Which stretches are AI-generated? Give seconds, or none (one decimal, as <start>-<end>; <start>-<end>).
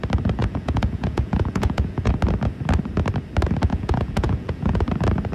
0.4-2.1; 3.7-4.8